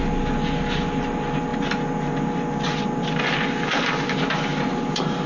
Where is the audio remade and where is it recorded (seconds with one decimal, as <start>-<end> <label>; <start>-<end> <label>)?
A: 0.0-5.3 recorded